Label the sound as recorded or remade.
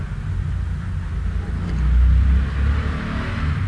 recorded